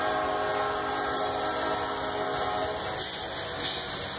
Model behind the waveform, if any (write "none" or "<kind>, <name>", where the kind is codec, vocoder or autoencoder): none